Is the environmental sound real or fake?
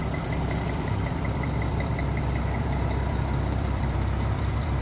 fake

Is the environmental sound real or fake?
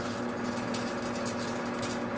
real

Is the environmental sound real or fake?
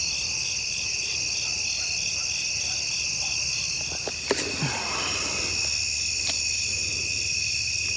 real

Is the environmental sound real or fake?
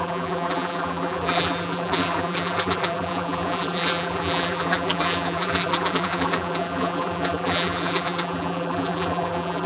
fake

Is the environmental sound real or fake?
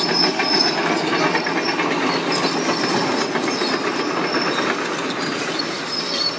real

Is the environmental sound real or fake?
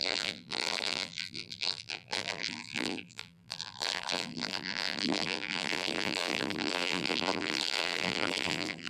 fake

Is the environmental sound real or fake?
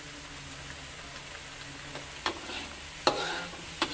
real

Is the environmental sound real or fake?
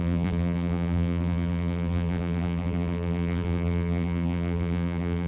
fake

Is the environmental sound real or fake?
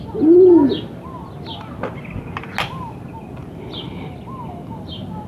real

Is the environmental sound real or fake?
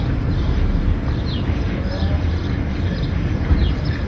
fake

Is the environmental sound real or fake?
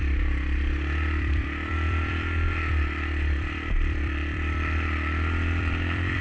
fake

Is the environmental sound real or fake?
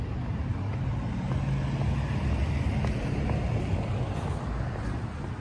real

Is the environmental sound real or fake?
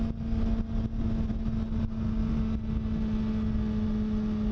real